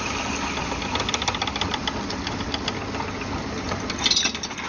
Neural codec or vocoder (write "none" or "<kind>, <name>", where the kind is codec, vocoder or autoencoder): none